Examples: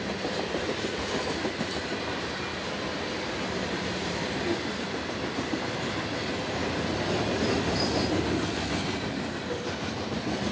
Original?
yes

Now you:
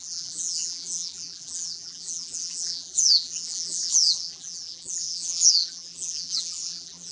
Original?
no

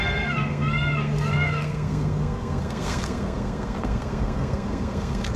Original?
no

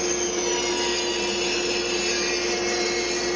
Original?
yes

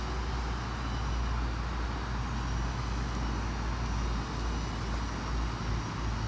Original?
yes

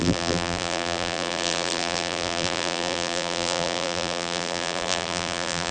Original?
no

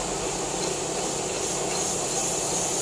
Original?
yes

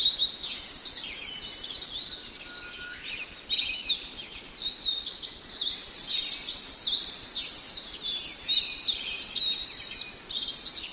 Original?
yes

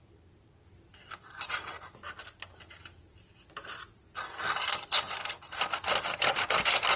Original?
yes